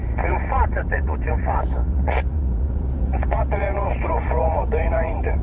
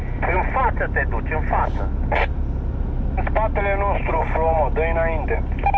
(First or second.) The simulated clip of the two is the first